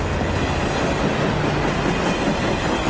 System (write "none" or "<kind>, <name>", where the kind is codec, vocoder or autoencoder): none